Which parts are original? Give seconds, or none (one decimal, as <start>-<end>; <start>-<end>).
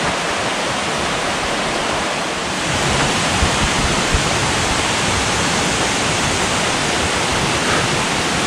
0.0-2.4; 4.6-8.5